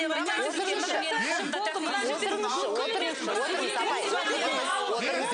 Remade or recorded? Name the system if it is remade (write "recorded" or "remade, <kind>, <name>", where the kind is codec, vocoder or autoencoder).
recorded